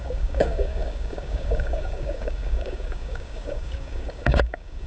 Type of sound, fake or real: fake